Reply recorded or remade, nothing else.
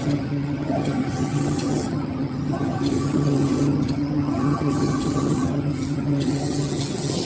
remade